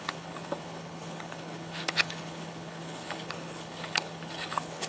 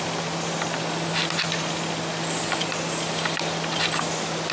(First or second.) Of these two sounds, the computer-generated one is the first